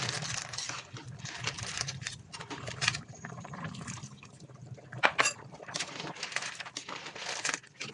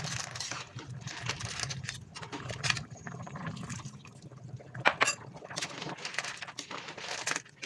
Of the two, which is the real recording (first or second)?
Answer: second